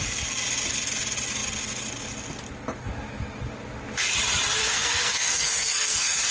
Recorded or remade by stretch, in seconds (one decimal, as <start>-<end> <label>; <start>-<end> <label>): 0.0-4.6 recorded; 4.6-6.3 remade